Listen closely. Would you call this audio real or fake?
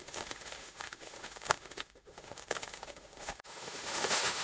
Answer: fake